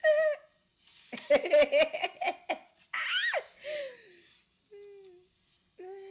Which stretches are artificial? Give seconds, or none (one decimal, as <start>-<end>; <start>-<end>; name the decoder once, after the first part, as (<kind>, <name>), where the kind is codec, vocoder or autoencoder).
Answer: none